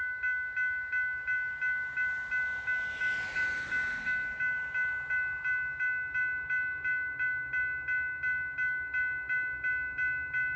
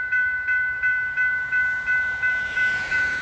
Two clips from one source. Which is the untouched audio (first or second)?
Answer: first